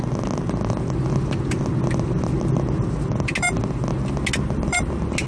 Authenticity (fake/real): real